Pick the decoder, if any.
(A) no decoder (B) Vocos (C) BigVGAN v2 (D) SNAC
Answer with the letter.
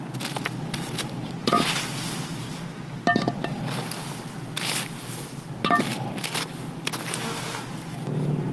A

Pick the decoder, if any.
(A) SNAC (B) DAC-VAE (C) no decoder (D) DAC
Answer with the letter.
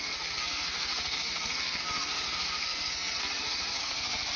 A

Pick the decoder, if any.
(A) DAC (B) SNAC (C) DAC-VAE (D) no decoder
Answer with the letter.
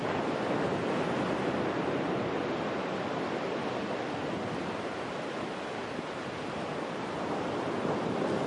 D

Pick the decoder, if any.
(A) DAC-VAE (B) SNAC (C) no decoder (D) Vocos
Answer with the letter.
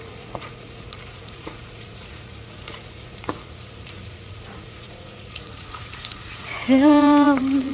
D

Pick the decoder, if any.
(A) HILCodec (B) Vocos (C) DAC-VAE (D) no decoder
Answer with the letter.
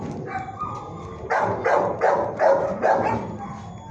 D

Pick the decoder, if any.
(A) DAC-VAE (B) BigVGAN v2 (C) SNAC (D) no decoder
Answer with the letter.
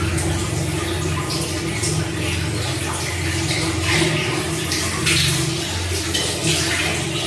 D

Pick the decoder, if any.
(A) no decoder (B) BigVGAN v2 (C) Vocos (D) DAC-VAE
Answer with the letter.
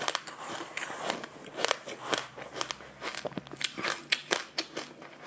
A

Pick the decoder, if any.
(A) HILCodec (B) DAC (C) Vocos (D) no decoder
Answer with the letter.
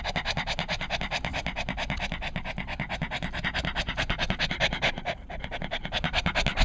D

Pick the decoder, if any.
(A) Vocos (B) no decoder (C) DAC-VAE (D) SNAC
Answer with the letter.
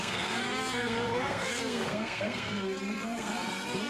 D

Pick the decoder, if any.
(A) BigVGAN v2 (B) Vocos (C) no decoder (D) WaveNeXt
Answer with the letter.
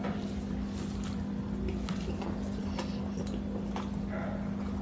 C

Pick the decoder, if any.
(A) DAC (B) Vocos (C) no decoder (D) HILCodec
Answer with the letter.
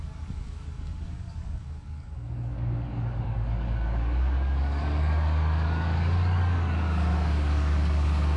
A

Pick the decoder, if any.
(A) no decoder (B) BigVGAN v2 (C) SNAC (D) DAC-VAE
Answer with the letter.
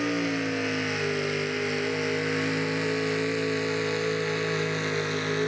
A